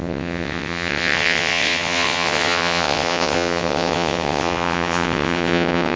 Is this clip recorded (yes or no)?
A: no